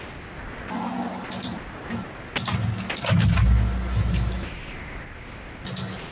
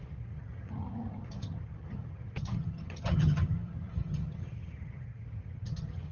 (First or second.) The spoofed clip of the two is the second